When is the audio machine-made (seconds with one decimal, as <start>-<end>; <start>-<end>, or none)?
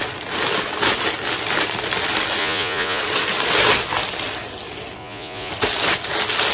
2.4-3.0; 5.0-5.5